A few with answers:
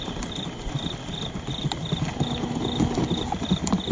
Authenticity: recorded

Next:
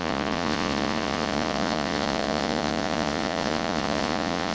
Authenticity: remade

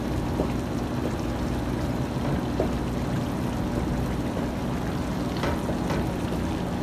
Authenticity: recorded